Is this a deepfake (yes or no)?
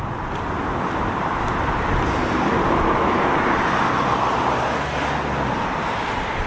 no